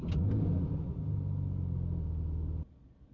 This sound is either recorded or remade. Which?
recorded